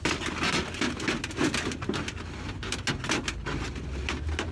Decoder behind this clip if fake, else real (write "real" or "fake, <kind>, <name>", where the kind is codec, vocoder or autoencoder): real